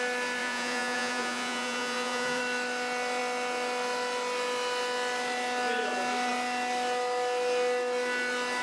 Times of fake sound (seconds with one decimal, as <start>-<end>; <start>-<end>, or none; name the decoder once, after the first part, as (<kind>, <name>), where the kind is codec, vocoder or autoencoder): 0.4-2.4 (vocoder, Vocos)